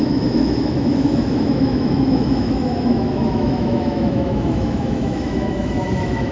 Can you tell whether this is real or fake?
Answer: fake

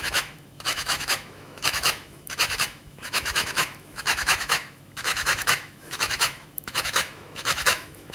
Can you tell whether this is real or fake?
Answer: fake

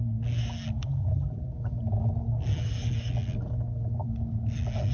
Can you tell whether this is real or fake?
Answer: real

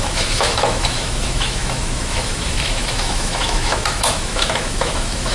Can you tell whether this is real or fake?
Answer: fake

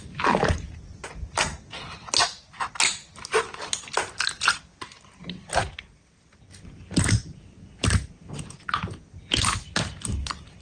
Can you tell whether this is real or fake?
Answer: real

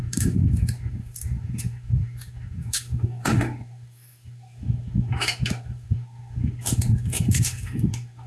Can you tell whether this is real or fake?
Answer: fake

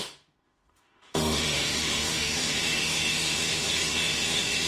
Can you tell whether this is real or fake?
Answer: fake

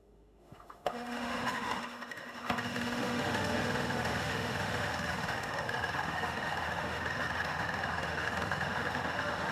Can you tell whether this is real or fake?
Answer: fake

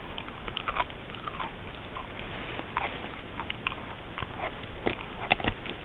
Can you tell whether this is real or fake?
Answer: real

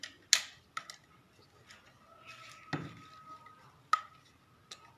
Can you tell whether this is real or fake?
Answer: real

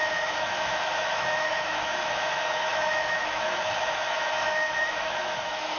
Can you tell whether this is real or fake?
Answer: fake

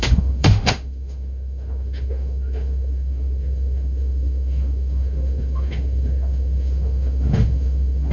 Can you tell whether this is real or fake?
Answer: fake